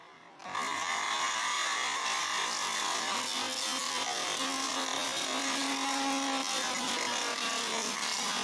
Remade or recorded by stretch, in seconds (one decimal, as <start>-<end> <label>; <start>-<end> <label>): 0.0-8.4 recorded